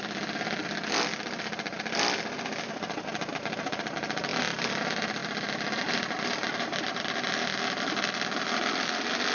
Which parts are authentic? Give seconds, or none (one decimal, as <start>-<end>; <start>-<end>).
0.0-9.3